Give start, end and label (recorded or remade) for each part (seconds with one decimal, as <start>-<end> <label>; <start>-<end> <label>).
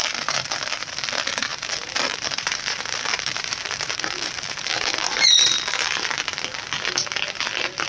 0.0-1.5 recorded; 1.5-5.3 remade; 5.3-7.9 recorded